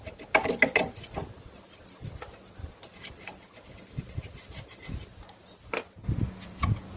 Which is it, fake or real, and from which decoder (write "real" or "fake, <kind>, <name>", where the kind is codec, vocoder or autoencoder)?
real